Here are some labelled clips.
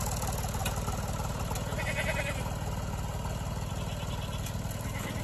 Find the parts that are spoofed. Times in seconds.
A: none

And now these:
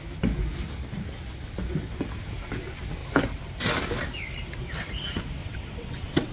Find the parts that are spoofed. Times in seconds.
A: 5.4-6.3 (vocoder, WaveNeXt)

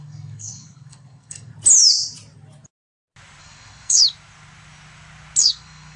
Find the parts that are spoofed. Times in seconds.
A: 0.0-1.5 (codec, SNAC); 3.4-4.0; 5.4-6.0